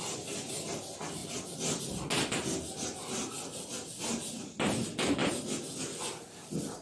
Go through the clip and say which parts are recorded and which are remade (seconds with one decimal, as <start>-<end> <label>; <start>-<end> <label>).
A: 0.0-6.8 recorded